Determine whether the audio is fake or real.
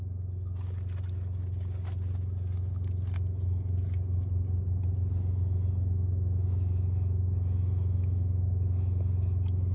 real